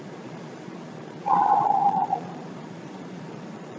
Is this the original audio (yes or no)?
no